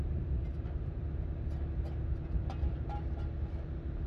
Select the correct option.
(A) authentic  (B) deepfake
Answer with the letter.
A